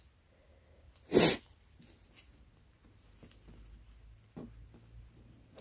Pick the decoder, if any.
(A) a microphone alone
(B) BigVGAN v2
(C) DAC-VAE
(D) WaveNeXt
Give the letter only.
A